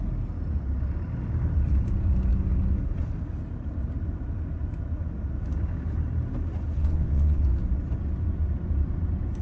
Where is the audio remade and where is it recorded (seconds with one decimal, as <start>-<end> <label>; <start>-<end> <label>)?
0.0-6.8 recorded; 6.8-7.4 remade; 7.4-9.4 recorded

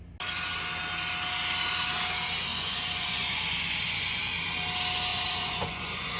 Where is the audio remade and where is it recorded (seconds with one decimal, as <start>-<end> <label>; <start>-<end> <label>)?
0.0-2.5 recorded; 2.5-4.2 remade; 4.2-5.1 recorded; 5.1-6.2 remade

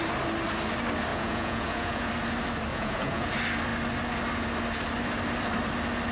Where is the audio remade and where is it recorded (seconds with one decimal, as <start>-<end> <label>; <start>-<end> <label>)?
0.0-1.1 recorded; 1.1-2.1 remade; 2.1-2.7 recorded; 2.7-3.3 remade; 3.3-6.1 recorded

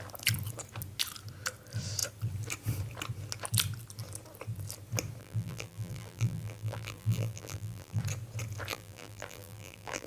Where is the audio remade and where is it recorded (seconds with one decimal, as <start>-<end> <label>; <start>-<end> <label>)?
0.0-5.2 recorded; 5.2-8.0 remade; 8.0-8.7 recorded; 8.7-10.1 remade

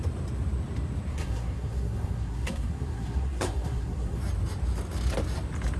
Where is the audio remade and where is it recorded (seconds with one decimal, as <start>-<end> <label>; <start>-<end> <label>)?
0.0-1.1 recorded; 1.1-4.2 remade; 4.2-5.8 recorded